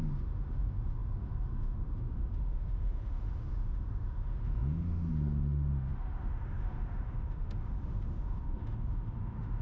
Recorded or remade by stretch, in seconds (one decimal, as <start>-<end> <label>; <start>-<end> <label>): 0.0-9.6 remade